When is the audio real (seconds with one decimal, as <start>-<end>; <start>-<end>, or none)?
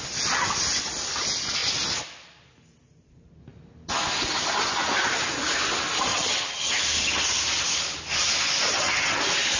0.0-6.1; 6.8-8.7; 9.2-9.6